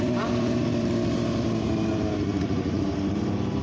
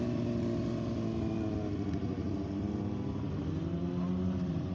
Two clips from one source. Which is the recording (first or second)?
second